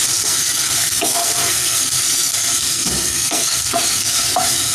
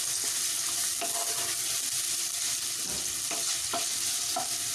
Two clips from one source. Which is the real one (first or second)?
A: second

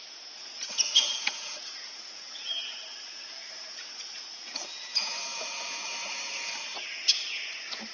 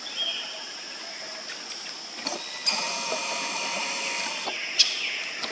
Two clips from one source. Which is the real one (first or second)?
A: second